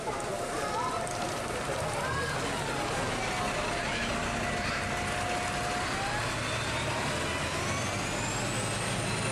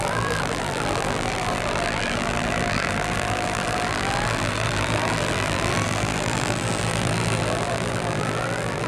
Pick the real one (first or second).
first